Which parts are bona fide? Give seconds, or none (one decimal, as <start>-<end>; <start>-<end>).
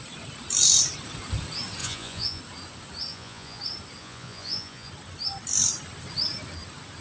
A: 0.0-1.8; 2.4-3.1; 3.6-4.0; 4.9-7.0